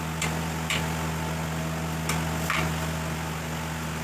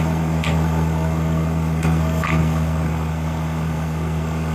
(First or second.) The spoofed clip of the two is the second